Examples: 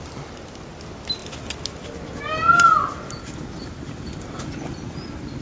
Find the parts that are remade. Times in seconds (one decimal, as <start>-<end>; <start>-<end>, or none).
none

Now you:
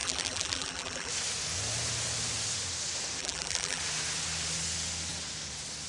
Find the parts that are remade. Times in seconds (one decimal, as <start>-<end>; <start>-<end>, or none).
0.0-1.1; 3.2-3.8

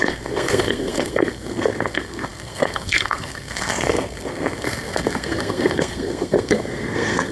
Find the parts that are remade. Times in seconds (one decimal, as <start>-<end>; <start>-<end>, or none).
0.0-7.3